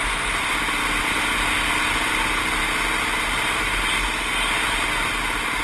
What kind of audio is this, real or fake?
real